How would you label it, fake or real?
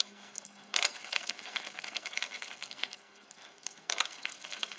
fake